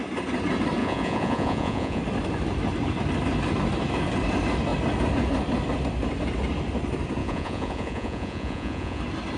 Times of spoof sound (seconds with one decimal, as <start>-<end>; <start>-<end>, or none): 0.8-2.0; 7.2-9.0